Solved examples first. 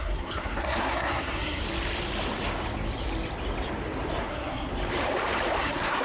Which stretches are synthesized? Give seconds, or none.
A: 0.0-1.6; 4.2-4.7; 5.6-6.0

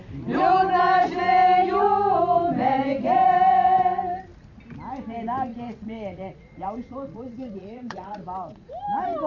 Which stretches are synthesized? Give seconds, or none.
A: 5.5-8.7

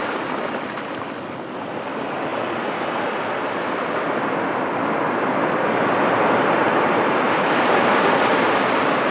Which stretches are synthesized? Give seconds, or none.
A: none

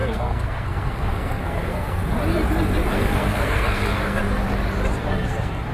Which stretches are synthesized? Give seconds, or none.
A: 0.0-2.0; 2.9-4.2; 5.0-5.7

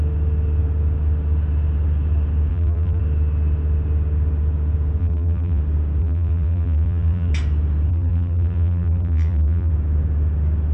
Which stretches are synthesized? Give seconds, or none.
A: 2.5-3.0; 5.0-5.6; 6.0-7.3; 7.9-9.7

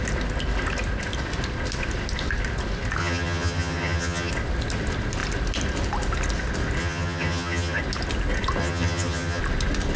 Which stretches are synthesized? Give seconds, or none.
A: 3.0-4.3; 6.8-7.8; 8.6-9.4